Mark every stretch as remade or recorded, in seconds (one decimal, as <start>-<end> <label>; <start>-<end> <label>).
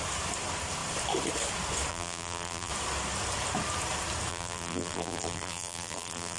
0.0-1.9 recorded; 1.9-2.7 remade; 2.7-4.3 recorded; 4.3-6.4 remade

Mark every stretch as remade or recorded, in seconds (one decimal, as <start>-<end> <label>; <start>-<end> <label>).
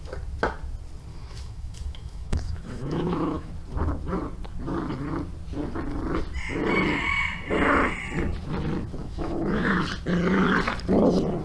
0.0-1.1 recorded; 1.1-3.5 remade; 3.5-9.0 recorded; 9.0-9.8 remade; 9.8-11.4 recorded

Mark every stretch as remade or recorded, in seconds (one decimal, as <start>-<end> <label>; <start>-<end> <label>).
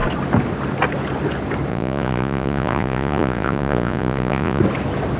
0.0-1.7 recorded; 1.7-4.6 remade; 4.6-5.2 recorded